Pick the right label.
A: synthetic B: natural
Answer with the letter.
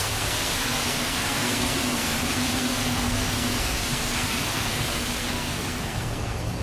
A